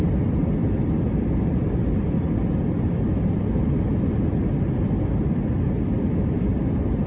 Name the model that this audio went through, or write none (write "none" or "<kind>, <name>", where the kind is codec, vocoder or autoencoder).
vocoder, BigVGAN v2